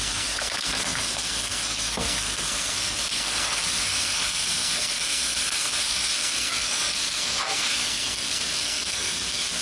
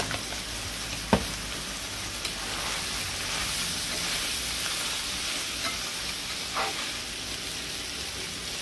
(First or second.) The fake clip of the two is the first